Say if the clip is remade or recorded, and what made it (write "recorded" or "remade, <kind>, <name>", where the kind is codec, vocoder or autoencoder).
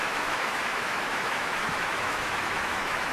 remade, autoencoder, DAC-VAE